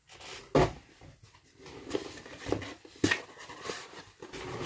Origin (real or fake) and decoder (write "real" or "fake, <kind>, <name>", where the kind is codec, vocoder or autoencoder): real